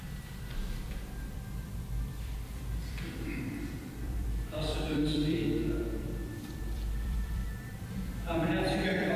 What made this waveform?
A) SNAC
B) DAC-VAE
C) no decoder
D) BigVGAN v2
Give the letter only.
D